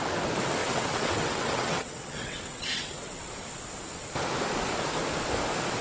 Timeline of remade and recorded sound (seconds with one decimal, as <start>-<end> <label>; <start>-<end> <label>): 0.0-0.6 recorded; 0.6-3.2 remade; 3.2-5.8 recorded